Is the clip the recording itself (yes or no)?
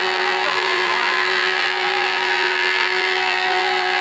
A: no